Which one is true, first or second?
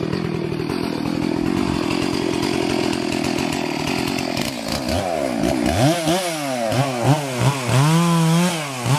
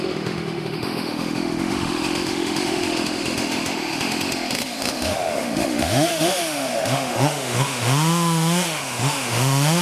first